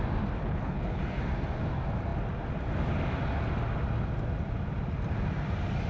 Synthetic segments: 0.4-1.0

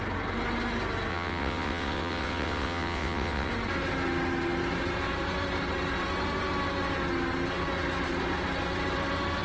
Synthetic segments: 1.1-3.5

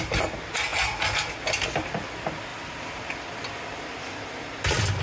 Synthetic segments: 2.5-4.1